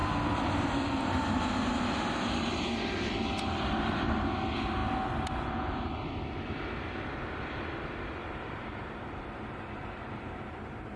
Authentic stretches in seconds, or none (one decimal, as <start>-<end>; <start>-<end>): 0.0-8.2